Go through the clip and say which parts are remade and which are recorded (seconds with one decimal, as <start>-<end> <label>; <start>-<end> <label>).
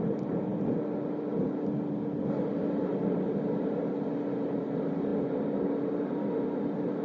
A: 0.0-7.0 recorded